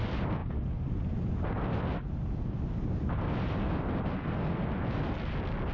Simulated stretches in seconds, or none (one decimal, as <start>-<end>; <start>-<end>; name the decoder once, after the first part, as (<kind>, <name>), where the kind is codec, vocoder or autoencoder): none